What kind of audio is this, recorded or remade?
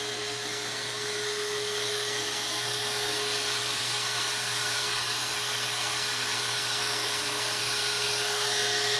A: remade